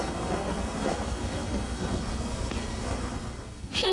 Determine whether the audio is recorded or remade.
remade